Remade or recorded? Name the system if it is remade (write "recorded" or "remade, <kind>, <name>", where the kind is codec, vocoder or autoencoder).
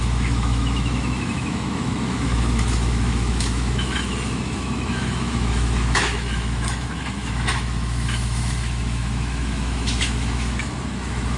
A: remade, autoencoder, DAC-VAE